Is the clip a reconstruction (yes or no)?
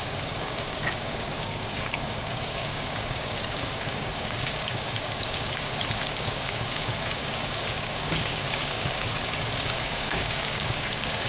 yes